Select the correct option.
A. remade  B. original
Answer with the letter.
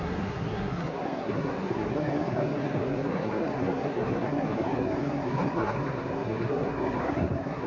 A